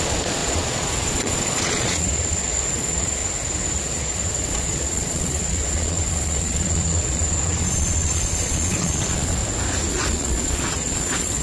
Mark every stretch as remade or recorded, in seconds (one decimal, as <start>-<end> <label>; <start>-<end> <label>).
0.0-3.2 remade; 3.2-3.7 recorded; 3.7-9.4 remade; 9.4-9.9 recorded; 9.9-11.4 remade

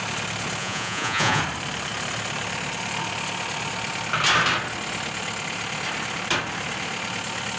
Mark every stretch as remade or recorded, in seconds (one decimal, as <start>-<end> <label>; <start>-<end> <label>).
0.0-0.6 recorded; 0.6-1.4 remade; 1.4-7.6 recorded

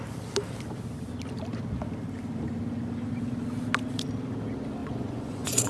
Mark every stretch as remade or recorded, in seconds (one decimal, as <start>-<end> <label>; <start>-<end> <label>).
0.0-4.8 recorded; 4.8-5.7 remade

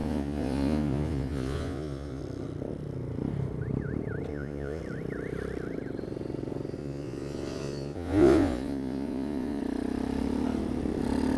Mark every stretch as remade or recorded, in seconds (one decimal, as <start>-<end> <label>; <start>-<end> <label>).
0.0-2.2 remade; 2.2-4.3 recorded; 4.3-4.8 remade; 4.8-6.8 recorded; 6.8-9.6 remade; 9.6-11.4 recorded

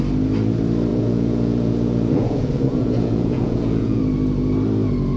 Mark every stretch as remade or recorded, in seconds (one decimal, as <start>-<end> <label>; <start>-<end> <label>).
0.0-0.9 recorded; 0.9-4.0 remade; 4.0-5.2 recorded

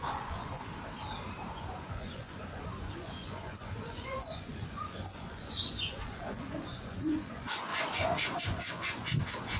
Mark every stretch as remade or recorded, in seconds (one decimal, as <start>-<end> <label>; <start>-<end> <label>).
0.0-0.7 remade; 0.7-1.5 recorded; 1.5-9.6 remade

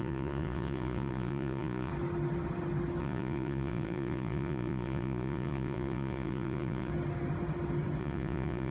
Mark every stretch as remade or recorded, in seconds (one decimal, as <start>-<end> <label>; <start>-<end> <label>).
0.0-1.9 remade; 1.9-3.0 recorded; 3.0-6.9 remade; 6.9-8.0 recorded; 8.0-8.7 remade